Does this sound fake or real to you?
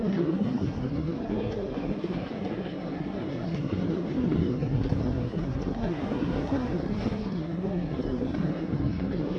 fake